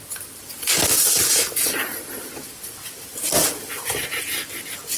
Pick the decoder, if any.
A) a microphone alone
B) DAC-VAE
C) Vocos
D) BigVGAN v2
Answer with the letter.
A